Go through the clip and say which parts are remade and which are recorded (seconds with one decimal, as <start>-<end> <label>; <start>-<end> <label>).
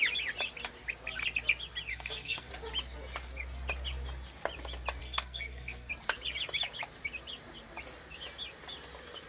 0.0-1.9 recorded; 1.9-2.5 remade; 2.5-5.0 recorded; 5.0-5.9 remade; 5.9-9.3 recorded